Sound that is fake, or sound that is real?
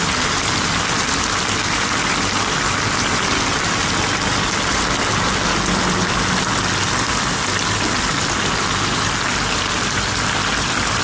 real